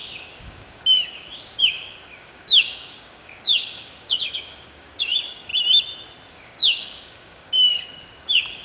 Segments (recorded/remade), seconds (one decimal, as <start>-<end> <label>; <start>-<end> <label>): 0.0-5.5 remade; 5.5-6.3 recorded; 6.3-8.6 remade